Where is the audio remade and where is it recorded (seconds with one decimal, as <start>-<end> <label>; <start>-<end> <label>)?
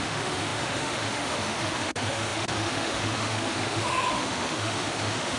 0.0-5.4 remade